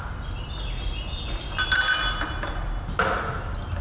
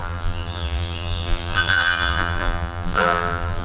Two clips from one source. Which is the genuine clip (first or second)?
first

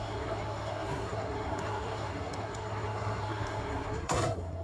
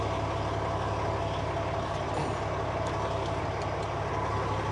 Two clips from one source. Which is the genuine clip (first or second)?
second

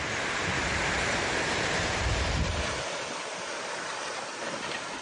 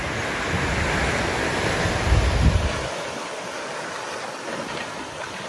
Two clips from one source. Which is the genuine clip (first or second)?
second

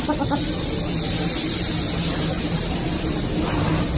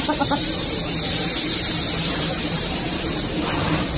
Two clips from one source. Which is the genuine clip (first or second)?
first